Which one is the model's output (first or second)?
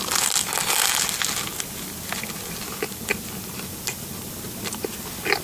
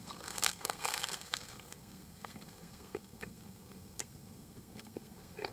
second